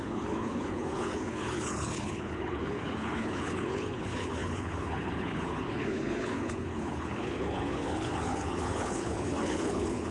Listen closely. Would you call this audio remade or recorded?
remade